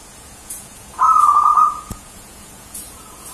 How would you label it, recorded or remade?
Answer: remade